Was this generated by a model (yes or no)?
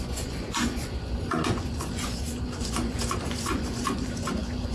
yes